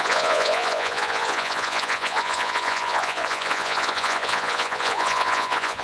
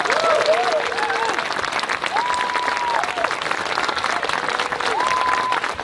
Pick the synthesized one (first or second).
first